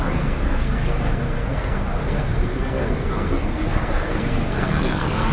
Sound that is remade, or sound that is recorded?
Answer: remade